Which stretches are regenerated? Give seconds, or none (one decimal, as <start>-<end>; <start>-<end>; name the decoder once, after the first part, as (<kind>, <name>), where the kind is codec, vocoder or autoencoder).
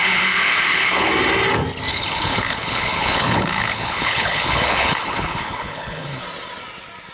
0.0-1.1 (codec, HILCodec); 1.9-6.2